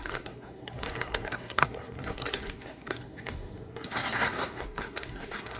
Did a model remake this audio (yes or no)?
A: yes